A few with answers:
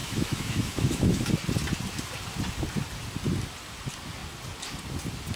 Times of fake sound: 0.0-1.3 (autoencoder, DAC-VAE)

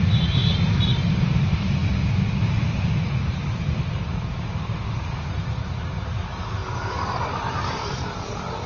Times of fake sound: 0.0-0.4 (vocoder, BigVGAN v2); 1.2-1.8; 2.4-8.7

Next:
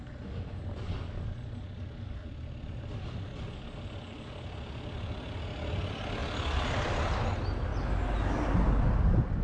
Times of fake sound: 2.2-5.4 (vocoder, BigVGAN v2); 6.2-7.2

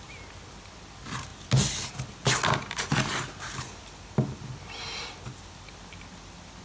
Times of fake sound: none

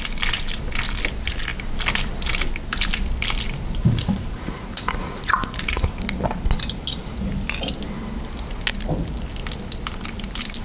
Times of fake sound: 3.8-6.0 (vocoder, Vocos)

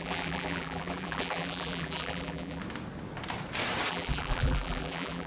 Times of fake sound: 0.0-2.6 (vocoder, BigVGAN v2); 3.9-5.3

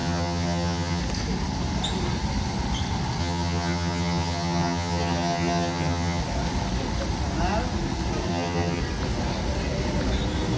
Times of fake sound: 0.0-1.0 (vocoder, HiFi-GAN); 3.2-6.2; 8.3-8.8